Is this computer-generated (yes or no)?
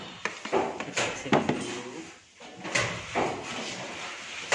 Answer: no